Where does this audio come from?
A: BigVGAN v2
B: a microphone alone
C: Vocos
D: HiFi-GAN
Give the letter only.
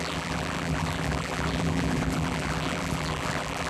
A